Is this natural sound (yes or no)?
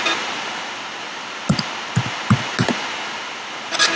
yes